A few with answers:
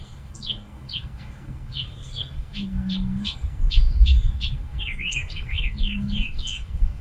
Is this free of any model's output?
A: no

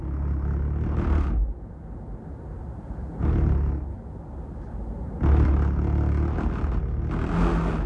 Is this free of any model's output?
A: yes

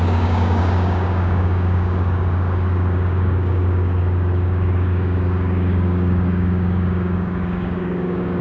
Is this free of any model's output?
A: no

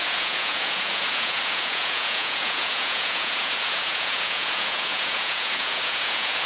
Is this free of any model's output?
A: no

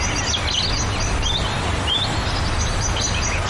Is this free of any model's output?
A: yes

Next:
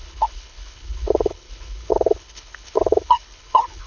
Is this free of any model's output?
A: no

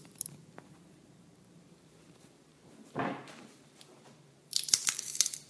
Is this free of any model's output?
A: no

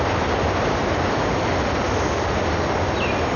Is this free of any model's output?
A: yes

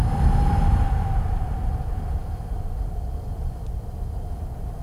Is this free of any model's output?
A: yes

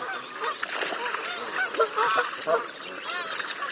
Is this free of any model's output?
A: yes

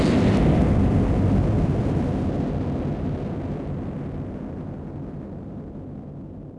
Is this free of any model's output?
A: yes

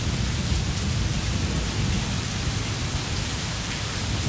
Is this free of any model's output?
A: yes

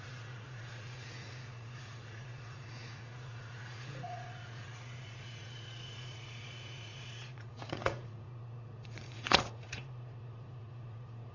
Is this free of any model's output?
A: no